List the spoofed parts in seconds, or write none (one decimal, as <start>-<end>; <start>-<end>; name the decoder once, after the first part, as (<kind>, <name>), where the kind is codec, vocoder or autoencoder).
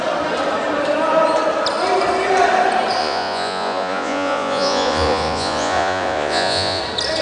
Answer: 3.0-6.8 (vocoder, Vocos)